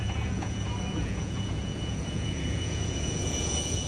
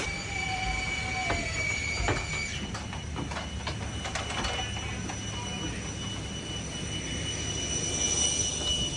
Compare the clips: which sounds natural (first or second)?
second